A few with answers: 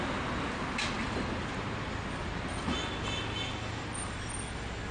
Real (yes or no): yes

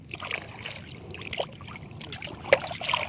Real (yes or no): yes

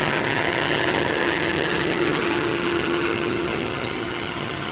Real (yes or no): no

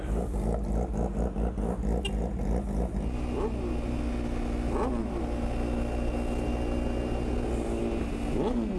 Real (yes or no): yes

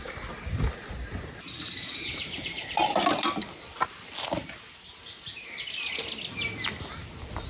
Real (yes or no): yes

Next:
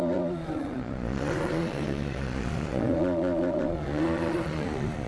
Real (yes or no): no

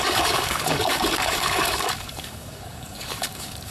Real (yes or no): no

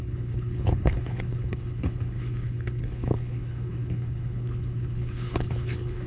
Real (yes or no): no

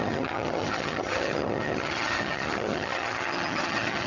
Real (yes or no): no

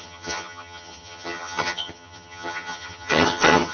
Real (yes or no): no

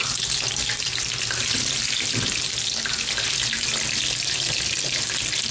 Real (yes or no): yes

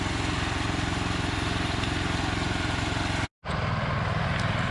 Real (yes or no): yes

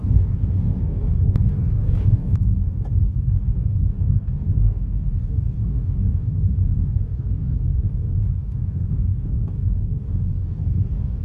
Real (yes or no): no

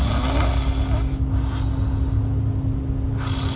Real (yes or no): yes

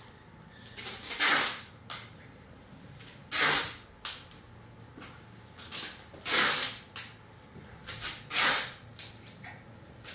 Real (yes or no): yes